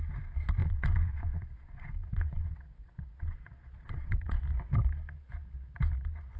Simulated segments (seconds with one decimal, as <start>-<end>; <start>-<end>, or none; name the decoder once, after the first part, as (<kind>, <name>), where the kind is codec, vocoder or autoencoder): 0.6-4.4 (vocoder, Vocos)